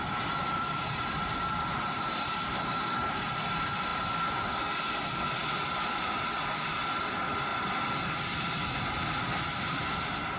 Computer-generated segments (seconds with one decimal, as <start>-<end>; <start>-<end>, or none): 0.0-2.4